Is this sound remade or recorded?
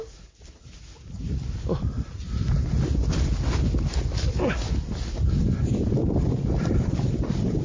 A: recorded